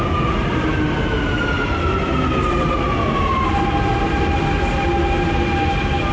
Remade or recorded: recorded